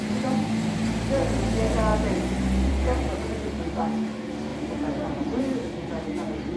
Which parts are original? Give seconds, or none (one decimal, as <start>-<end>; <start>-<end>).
0.0-3.1; 3.8-4.5; 5.4-6.6